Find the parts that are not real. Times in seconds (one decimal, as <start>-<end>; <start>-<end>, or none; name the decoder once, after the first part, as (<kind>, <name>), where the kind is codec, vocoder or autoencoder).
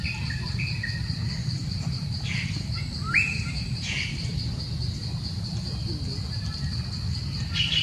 1.6-2.7 (vocoder, BigVGAN v2); 3.3-4.3; 6.1-6.7